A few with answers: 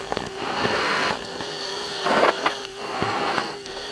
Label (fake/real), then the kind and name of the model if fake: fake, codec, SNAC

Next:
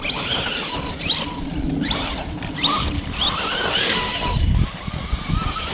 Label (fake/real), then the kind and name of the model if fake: fake, vocoder, BigVGAN v2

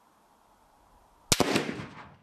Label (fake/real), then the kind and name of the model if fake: real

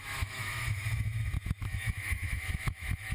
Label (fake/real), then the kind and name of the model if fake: fake, autoencoder, DAC-VAE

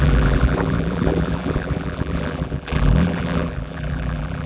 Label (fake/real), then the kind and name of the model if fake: fake, vocoder, BigVGAN v2